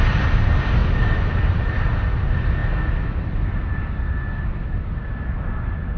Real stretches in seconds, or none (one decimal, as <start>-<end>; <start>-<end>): 0.0-6.0